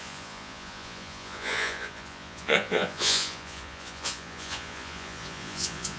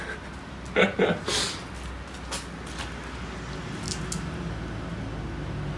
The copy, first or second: first